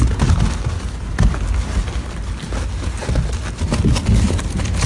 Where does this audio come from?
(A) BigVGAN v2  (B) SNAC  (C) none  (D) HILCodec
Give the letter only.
C